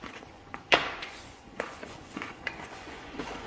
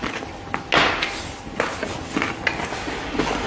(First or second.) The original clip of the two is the second